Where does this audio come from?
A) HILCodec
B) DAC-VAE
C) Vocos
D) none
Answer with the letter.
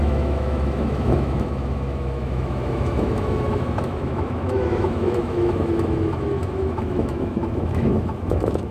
B